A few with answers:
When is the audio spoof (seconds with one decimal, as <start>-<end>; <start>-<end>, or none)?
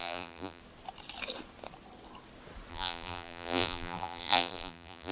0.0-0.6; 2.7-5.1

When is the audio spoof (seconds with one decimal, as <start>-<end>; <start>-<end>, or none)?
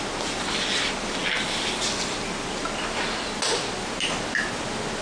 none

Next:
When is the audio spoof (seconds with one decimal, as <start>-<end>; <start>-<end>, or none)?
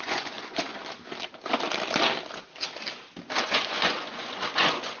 0.0-0.7; 3.4-5.0